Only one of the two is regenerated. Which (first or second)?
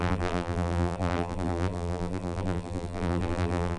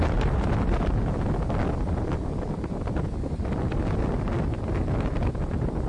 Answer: first